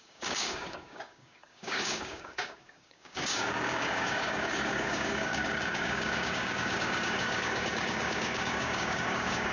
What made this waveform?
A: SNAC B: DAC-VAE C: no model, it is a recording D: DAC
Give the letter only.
D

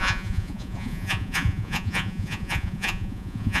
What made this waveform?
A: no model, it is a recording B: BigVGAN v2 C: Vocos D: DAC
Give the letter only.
C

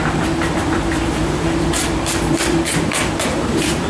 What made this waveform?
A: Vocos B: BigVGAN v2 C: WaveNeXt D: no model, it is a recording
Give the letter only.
B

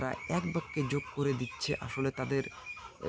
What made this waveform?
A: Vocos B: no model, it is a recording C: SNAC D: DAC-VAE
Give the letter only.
B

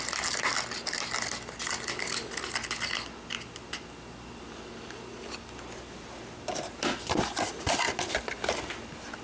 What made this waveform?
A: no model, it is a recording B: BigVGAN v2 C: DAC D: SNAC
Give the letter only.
A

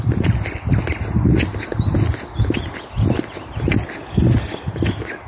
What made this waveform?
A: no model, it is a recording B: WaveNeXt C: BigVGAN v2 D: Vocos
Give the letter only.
A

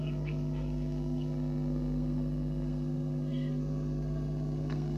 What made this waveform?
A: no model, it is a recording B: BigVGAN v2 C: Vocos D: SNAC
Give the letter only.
D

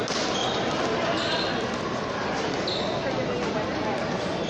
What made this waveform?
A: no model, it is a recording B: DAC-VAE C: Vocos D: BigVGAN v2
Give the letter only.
A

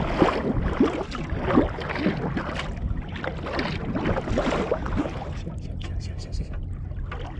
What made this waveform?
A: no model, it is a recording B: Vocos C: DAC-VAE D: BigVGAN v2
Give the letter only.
A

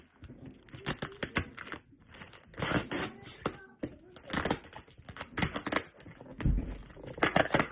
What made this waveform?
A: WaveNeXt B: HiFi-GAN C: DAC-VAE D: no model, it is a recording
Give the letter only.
D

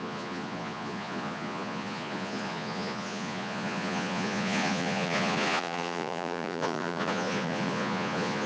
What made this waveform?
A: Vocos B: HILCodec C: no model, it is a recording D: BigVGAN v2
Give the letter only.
A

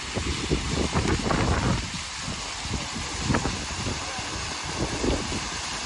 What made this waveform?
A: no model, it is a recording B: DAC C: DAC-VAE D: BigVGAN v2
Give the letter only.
A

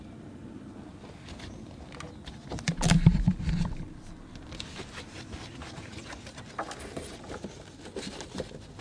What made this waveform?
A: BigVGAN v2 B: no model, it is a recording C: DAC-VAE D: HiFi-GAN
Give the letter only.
B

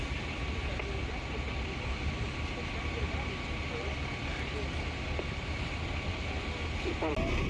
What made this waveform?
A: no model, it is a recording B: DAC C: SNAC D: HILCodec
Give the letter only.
A